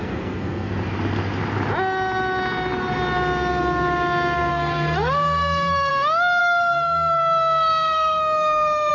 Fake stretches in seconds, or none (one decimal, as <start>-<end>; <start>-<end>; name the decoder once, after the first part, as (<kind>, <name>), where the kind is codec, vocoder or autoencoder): 0.0-0.7 (codec, SNAC); 4.5-5.9; 6.4-8.9